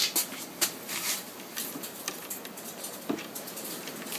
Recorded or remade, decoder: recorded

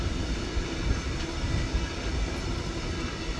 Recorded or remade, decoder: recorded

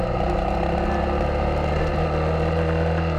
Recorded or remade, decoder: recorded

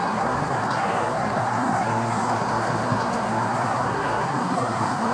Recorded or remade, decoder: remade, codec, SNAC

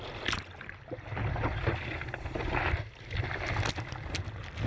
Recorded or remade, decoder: recorded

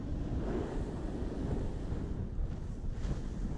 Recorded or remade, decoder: recorded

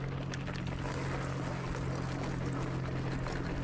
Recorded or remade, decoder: recorded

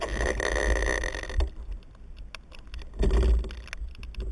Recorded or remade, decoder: recorded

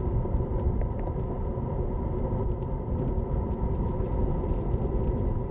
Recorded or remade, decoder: recorded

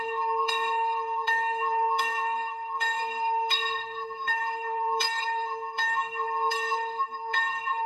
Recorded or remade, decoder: remade, codec, SNAC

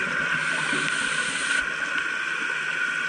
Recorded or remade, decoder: recorded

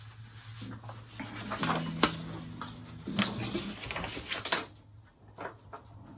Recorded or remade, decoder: recorded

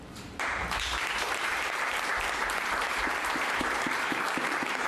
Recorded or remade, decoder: remade, vocoder, BigVGAN v2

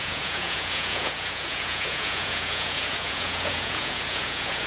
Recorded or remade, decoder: remade, vocoder, Vocos